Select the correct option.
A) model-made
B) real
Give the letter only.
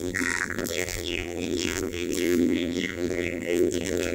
A